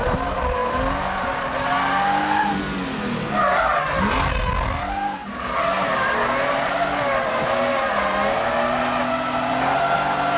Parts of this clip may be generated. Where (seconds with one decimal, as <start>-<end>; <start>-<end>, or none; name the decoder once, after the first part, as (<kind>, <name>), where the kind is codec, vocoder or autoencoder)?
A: none